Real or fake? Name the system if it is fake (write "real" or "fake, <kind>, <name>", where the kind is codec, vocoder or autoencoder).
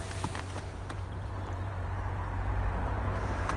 fake, vocoder, BigVGAN v2